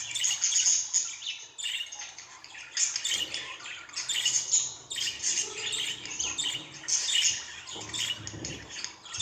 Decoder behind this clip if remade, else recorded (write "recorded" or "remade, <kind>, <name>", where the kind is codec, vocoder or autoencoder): recorded